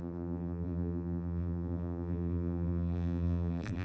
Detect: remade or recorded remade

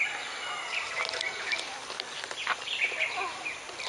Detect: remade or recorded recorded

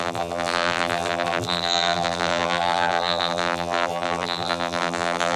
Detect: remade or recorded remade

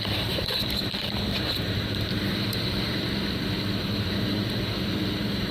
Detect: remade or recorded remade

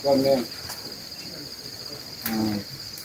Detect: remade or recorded recorded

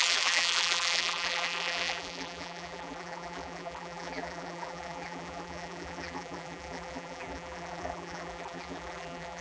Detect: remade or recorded remade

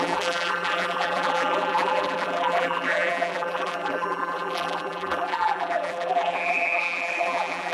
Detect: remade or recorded remade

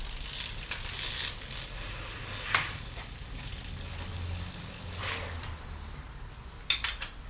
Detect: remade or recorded recorded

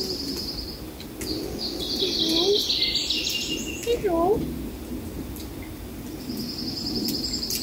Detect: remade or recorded recorded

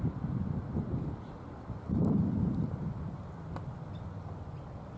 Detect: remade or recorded recorded